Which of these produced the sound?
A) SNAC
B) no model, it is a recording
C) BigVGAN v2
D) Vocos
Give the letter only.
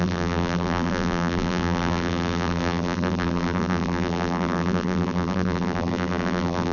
C